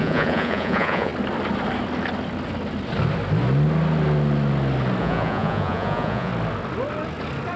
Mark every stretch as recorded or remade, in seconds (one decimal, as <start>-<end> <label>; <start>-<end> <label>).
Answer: 0.0-1.1 remade; 1.1-5.0 recorded; 5.0-6.3 remade; 6.3-7.6 recorded